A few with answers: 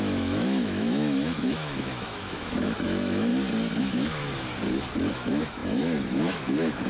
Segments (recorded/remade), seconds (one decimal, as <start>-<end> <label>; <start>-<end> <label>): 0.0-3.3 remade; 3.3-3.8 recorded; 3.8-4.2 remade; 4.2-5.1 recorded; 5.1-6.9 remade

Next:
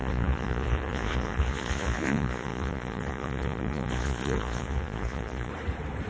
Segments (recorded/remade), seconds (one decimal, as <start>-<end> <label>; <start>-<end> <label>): 0.0-5.5 remade; 5.5-6.1 recorded

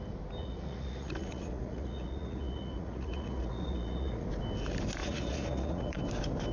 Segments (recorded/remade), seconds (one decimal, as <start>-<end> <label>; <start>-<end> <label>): 0.0-0.4 recorded; 0.4-4.3 remade; 4.3-5.0 recorded; 5.0-6.0 remade; 6.0-6.5 recorded